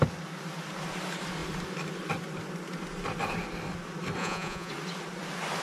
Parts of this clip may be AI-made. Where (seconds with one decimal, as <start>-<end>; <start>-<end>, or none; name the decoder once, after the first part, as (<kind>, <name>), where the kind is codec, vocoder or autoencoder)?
4.2-4.7 (vocoder, Vocos)